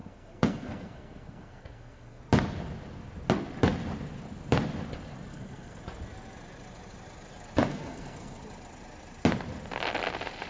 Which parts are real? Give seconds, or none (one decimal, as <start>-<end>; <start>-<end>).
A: 2.2-5.3; 5.8-7.7; 8.4-10.5